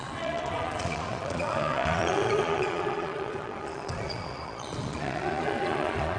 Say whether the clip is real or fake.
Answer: fake